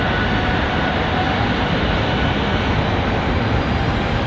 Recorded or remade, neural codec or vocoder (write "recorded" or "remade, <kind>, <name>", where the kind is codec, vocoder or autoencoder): recorded